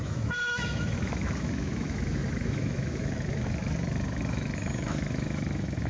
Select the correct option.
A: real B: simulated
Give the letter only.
B